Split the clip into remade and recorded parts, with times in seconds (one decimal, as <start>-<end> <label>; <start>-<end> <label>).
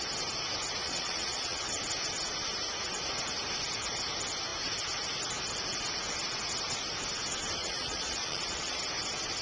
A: 0.0-0.8 recorded; 0.8-1.6 remade; 1.6-7.6 recorded; 7.6-8.8 remade; 8.8-9.4 recorded